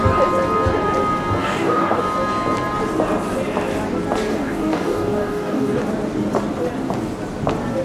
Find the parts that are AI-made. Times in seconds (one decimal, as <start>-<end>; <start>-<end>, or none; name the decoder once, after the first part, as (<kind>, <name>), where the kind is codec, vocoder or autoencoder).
1.4-2.0 (codec, DAC); 4.3-5.8